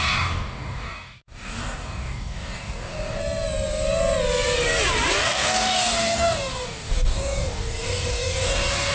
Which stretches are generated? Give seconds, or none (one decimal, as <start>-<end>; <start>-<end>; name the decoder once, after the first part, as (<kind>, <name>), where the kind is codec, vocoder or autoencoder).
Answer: 0.0-3.2 (codec, DAC); 5.2-8.9